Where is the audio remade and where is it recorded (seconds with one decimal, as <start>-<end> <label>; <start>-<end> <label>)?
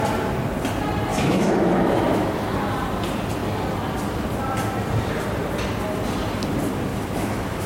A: 0.0-1.1 recorded; 1.1-2.3 remade; 2.3-6.9 recorded; 6.9-7.7 remade